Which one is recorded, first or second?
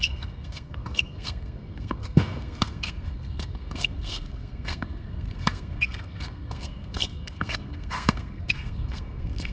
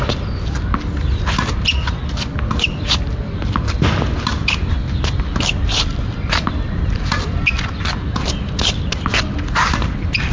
second